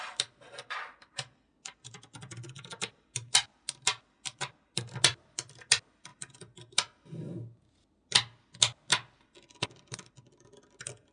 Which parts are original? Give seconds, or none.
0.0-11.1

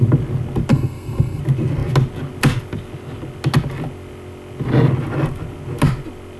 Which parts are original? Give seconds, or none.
0.0-0.7; 1.4-6.4